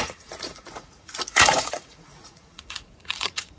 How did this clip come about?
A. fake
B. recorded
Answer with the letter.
A